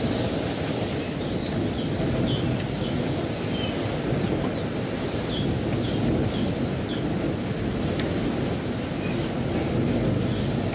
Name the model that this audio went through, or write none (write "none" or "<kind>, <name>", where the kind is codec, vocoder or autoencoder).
none